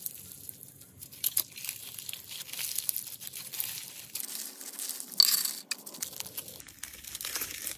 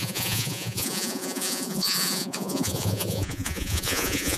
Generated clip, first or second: second